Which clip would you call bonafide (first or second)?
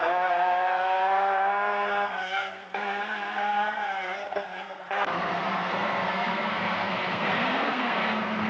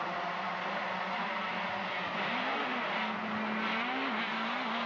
second